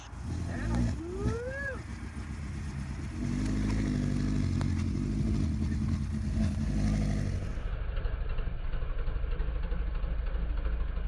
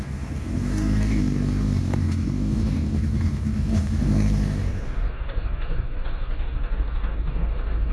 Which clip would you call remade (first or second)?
second